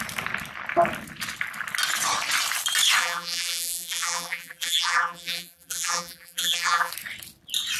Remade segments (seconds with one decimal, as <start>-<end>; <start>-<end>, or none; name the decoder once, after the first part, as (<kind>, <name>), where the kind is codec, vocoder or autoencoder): 3.0-6.9 (vocoder, BigVGAN v2)